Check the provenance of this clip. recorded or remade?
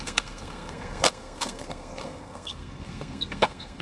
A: remade